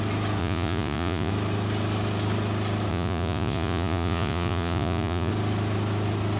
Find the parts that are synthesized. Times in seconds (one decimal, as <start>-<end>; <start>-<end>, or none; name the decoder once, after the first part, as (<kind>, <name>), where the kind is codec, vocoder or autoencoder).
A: 0.4-1.3 (vocoder, Vocos); 2.9-5.3